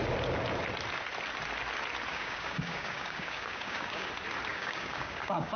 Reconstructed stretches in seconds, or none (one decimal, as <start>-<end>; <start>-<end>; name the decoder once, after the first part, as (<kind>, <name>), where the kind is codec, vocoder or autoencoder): 2.1-4.1 (codec, DAC); 4.5-5.6